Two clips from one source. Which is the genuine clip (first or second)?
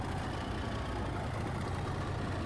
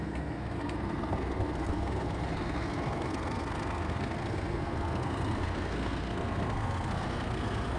first